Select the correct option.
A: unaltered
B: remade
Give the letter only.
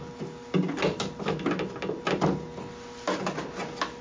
A